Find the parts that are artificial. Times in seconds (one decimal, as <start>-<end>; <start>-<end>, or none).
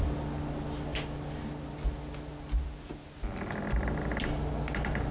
none